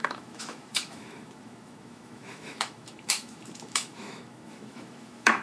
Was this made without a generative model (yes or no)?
no